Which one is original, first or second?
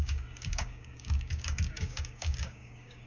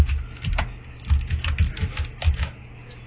second